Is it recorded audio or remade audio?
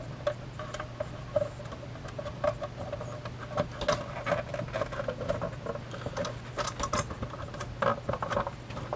recorded